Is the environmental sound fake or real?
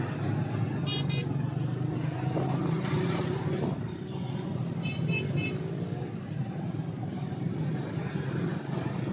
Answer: real